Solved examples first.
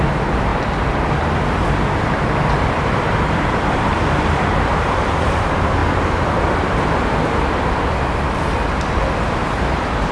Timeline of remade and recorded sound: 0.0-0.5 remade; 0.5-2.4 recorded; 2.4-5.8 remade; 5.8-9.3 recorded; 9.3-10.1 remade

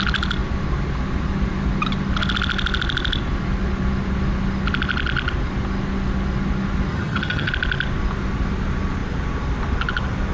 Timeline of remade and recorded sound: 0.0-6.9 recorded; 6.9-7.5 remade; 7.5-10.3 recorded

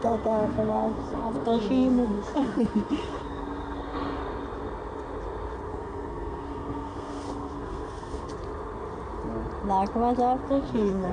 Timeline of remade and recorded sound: 0.0-4.2 remade; 4.2-5.7 recorded; 5.7-8.3 remade; 8.3-10.5 recorded; 10.5-11.1 remade

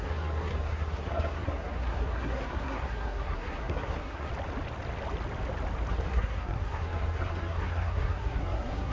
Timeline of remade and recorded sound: 0.0-4.3 remade; 4.3-5.9 recorded; 5.9-8.9 remade

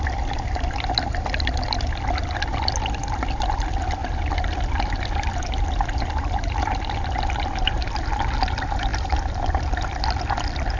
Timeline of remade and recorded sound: 0.0-10.8 recorded